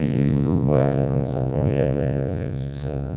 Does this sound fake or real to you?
fake